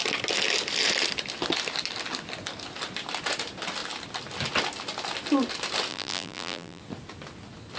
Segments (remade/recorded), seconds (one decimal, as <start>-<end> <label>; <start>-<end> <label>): 0.0-5.9 recorded; 5.9-6.8 remade; 6.8-7.8 recorded